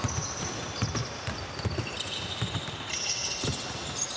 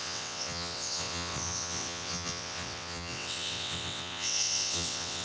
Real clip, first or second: first